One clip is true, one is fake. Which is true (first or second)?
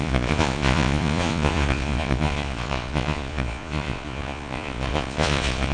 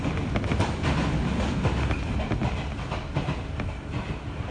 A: second